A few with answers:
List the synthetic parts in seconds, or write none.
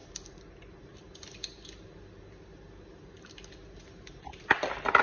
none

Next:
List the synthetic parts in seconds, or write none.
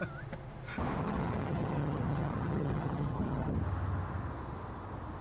1.0-3.5 (vocoder, HiFi-GAN)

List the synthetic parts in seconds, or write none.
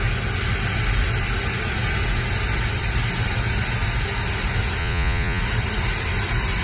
4.8-5.4 (vocoder, Vocos)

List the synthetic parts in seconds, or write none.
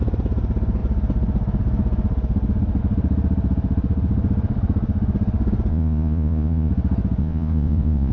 5.7-6.7 (vocoder, Vocos); 7.2-8.1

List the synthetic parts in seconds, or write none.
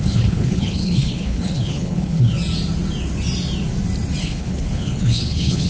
0.0-2.3 (codec, HILCodec); 4.2-5.7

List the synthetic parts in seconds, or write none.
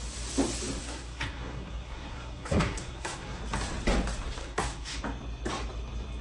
0.8-3.4 (codec, SNAC); 4.4-5.0